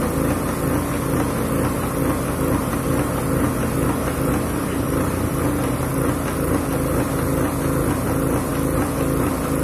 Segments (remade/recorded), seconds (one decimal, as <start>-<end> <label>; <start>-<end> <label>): 0.0-9.6 recorded